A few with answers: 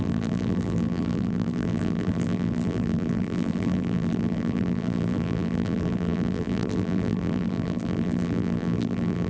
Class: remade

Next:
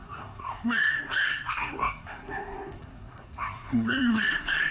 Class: remade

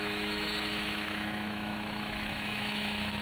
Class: remade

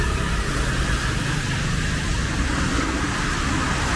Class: recorded